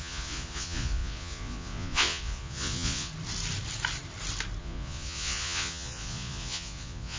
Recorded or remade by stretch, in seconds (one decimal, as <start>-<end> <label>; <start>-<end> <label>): 0.0-3.1 remade; 3.1-4.6 recorded; 4.6-7.2 remade